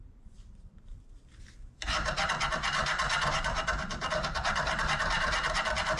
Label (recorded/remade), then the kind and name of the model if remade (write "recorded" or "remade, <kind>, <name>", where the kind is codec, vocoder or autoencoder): remade, vocoder, BigVGAN v2